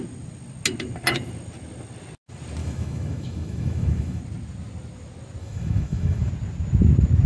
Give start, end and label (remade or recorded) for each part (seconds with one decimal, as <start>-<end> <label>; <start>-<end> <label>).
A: 0.0-2.6 recorded; 2.6-4.2 remade; 4.2-5.4 recorded; 5.4-6.3 remade; 6.3-7.3 recorded